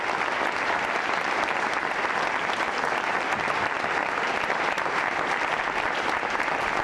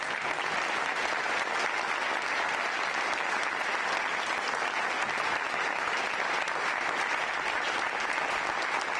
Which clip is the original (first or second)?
second